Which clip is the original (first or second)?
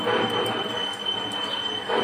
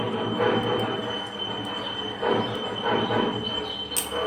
second